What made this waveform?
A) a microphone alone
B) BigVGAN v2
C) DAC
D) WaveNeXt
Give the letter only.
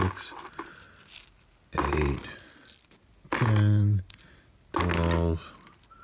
A